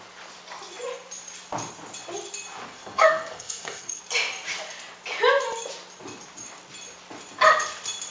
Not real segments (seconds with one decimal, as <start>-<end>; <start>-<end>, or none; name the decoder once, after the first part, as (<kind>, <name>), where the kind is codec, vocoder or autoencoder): 2.7-4.0 (codec, SNAC)